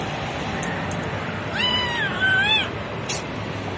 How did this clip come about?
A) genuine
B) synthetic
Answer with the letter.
B